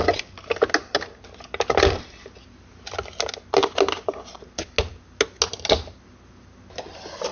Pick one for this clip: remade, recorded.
recorded